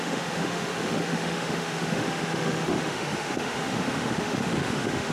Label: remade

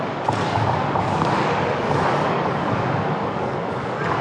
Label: remade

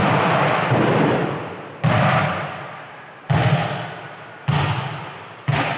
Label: remade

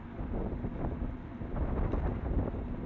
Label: recorded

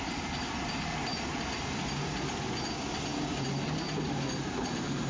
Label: recorded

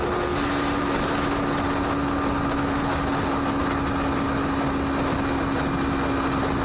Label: recorded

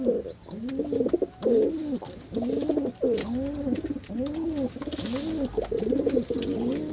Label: recorded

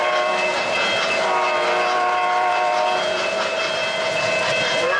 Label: remade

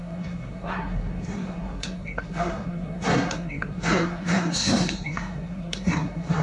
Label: remade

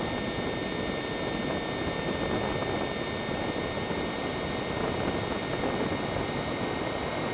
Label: recorded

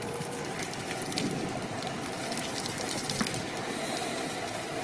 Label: remade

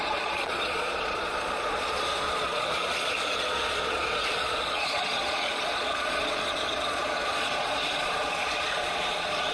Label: remade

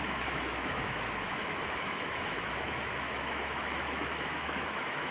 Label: remade